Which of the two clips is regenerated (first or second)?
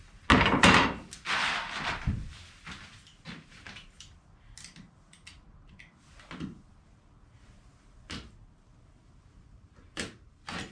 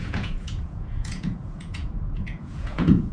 second